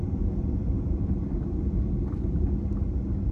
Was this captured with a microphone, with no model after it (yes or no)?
yes